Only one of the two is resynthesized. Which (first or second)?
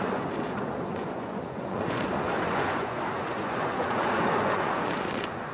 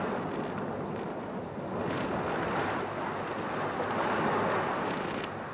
first